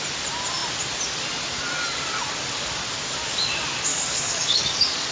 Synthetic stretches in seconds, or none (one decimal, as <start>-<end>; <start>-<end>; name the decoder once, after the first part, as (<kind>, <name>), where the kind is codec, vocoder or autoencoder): 3.9-5.1 (codec, DAC)